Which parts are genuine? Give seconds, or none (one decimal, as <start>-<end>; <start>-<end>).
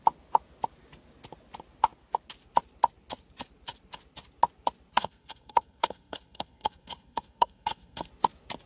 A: 0.0-4.9; 8.1-8.7